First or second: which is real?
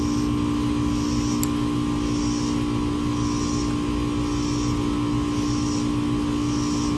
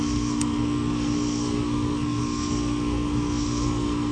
first